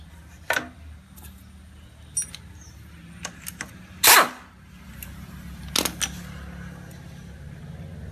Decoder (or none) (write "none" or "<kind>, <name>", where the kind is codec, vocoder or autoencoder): none